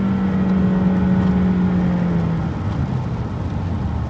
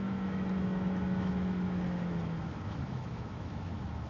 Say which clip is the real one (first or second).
first